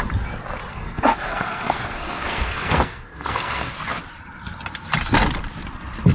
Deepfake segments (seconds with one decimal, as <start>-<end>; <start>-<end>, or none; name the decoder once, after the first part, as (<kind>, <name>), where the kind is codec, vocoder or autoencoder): 0.7-3.7 (codec, SNAC)